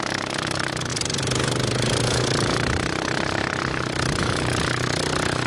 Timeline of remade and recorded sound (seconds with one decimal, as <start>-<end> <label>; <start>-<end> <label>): 0.0-5.5 recorded